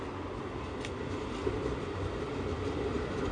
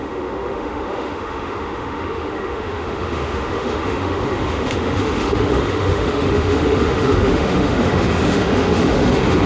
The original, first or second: first